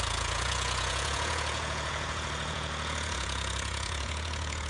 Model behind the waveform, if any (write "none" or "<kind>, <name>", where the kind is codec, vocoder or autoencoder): vocoder, Vocos